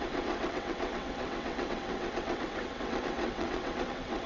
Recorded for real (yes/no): no